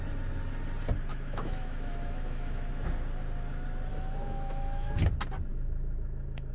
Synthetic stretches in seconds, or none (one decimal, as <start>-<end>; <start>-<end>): 1.1-2.7; 3.9-5.0; 5.5-6.5